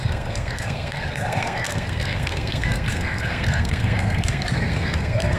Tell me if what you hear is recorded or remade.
remade